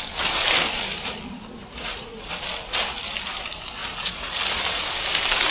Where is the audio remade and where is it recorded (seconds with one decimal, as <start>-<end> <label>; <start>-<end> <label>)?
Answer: 0.0-1.6 recorded; 1.6-2.3 remade; 2.3-3.8 recorded; 3.8-4.4 remade; 4.4-5.5 recorded